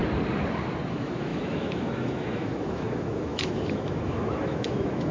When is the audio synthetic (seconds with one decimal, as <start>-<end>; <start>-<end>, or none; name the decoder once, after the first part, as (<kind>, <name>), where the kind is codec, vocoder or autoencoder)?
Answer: 0.9-5.1 (autoencoder, DAC-VAE)